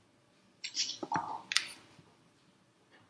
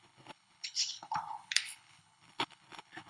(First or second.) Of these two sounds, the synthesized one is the second